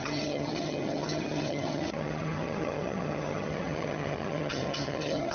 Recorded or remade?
remade